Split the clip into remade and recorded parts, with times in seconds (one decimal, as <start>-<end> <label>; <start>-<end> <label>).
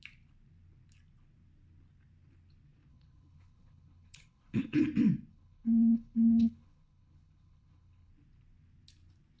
0.0-2.9 recorded; 2.9-4.8 remade; 4.8-5.3 recorded; 5.3-8.1 remade; 8.1-9.4 recorded